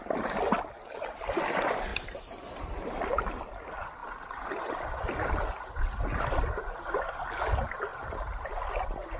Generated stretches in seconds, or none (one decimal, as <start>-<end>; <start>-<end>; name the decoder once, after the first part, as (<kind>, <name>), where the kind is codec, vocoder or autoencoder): 4.0-5.7 (vocoder, BigVGAN v2); 7.9-8.5